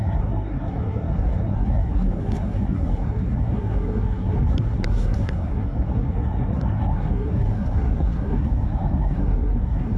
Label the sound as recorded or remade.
remade